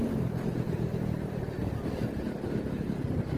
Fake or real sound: real